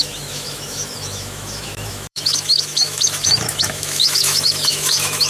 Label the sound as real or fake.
fake